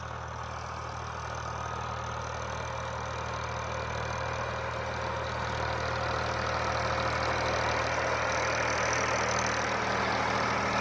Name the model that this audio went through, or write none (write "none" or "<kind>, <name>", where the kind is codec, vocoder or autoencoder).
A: none